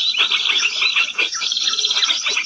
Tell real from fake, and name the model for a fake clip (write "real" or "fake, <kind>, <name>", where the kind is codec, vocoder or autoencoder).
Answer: real